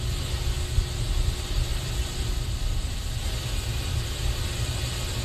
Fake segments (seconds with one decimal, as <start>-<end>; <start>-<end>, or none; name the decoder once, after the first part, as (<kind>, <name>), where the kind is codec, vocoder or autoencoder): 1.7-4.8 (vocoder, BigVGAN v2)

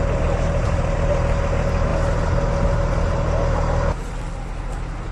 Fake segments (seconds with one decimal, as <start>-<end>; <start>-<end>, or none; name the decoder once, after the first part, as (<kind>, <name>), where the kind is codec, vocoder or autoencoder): none

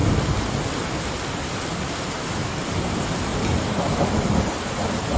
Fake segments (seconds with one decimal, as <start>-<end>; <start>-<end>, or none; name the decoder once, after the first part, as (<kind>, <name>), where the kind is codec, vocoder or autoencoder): 2.9-3.3 (vocoder, BigVGAN v2); 4.7-5.2

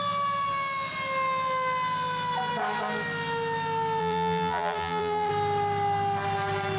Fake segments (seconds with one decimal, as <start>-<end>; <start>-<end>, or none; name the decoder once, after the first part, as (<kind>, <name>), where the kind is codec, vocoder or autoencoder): 4.0-5.3 (vocoder, BigVGAN v2)

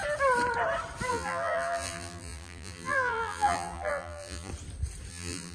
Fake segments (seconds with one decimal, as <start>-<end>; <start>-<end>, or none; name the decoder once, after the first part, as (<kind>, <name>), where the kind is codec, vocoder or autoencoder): 1.1-4.5 (vocoder, BigVGAN v2); 5.1-5.5